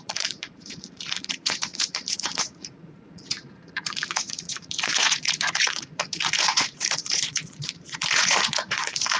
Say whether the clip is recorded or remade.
remade